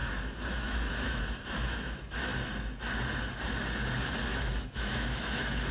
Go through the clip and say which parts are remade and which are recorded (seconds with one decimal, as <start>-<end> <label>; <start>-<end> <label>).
0.0-2.3 remade; 2.3-4.5 recorded; 4.5-5.7 remade